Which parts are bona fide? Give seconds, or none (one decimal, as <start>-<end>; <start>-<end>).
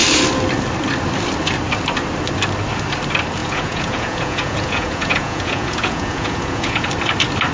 0.0-3.4; 6.9-7.5